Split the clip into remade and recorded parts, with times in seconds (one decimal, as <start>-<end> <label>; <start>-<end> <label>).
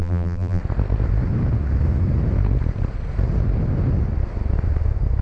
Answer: 0.0-0.6 remade; 0.6-5.2 recorded